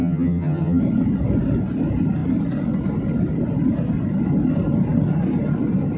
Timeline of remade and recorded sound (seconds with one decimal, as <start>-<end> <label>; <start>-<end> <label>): 0.0-0.8 remade; 0.8-6.0 recorded